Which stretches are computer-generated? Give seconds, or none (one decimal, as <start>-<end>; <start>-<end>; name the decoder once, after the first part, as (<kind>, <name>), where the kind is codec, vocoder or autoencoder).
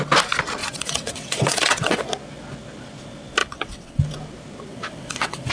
0.6-2.0 (vocoder, WaveNeXt); 3.4-4.0; 4.7-5.5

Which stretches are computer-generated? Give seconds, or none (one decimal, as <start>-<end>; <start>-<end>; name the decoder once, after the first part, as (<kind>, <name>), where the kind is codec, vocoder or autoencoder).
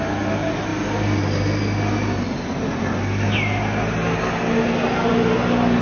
none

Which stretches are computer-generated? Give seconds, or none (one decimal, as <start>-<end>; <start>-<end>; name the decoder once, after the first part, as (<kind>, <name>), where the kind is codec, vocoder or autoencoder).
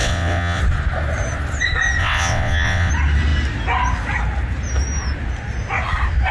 0.0-0.6 (vocoder, WaveNeXt); 2.0-2.9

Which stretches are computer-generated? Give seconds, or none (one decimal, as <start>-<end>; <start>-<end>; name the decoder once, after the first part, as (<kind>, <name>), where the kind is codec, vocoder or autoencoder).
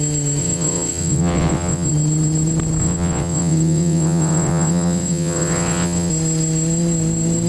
0.4-1.9 (vocoder, WaveNeXt); 2.8-6.1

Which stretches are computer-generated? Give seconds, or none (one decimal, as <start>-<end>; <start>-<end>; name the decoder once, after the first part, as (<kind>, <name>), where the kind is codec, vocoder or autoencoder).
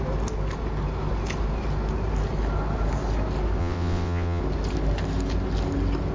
3.6-4.4 (vocoder, WaveNeXt)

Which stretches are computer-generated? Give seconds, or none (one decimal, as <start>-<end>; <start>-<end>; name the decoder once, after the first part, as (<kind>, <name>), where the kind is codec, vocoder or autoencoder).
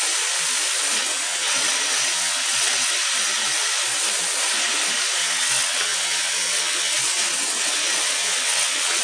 1.0-2.9 (vocoder, WaveNeXt); 5.2-9.0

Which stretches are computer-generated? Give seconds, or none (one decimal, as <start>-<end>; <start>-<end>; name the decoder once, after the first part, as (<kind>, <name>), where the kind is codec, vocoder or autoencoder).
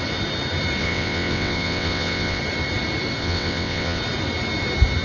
0.8-2.4 (vocoder, WaveNeXt); 3.2-4.0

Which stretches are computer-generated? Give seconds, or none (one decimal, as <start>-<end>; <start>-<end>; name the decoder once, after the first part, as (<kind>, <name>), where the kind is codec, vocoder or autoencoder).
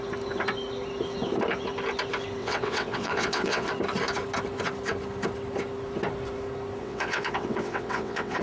2.4-3.7 (vocoder, WaveNeXt); 6.8-8.4